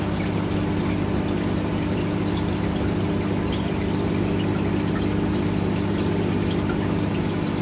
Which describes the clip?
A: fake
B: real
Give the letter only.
B